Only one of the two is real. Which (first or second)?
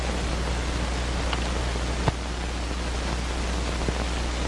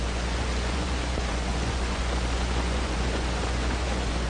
first